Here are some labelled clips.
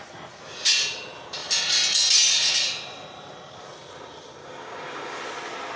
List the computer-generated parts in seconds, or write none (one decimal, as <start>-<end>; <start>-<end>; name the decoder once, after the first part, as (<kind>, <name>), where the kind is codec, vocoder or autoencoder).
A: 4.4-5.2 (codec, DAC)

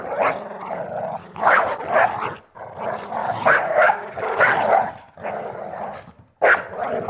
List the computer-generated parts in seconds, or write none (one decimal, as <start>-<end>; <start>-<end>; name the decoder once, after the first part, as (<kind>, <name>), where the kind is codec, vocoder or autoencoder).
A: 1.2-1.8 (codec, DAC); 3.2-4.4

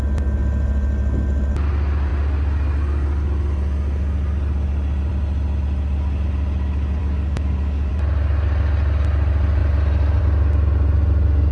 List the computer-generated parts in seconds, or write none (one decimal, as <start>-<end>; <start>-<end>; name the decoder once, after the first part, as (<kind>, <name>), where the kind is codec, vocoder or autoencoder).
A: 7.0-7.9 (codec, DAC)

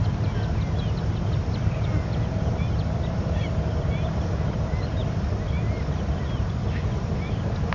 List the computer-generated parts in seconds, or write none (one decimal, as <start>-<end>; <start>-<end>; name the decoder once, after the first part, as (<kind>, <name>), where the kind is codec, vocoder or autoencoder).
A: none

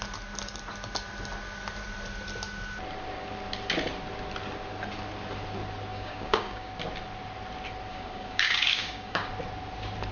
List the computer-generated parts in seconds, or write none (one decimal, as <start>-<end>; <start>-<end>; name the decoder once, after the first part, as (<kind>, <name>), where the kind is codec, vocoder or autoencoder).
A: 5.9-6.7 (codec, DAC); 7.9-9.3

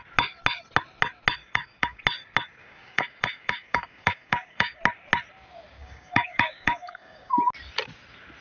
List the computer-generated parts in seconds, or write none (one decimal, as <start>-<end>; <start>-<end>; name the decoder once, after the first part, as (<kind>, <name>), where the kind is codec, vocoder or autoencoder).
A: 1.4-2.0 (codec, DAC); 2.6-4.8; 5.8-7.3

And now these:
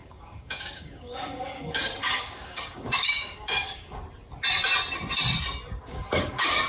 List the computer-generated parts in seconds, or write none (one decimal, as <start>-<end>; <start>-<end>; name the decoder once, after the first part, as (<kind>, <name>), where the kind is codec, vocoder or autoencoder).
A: 0.0-4.0 (codec, DAC); 5.9-6.7